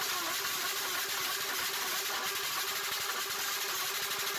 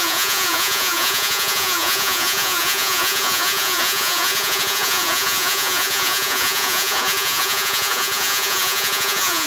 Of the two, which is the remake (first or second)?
second